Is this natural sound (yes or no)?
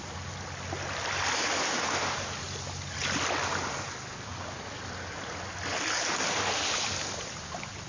yes